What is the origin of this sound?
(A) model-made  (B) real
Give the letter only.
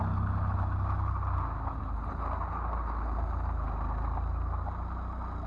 B